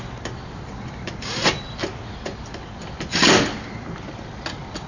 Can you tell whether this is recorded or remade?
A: recorded